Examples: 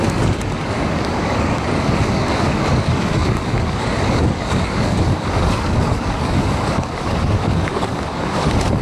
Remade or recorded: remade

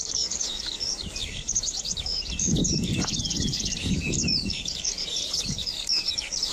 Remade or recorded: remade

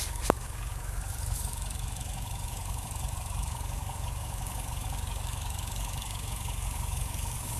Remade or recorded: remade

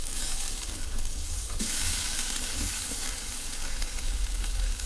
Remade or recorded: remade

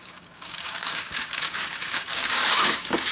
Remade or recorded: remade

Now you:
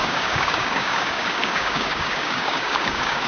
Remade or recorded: remade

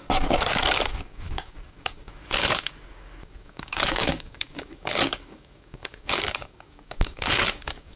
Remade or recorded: remade